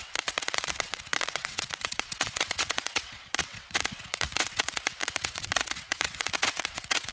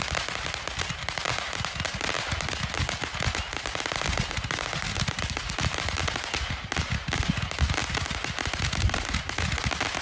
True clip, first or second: second